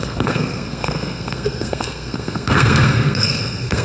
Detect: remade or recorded remade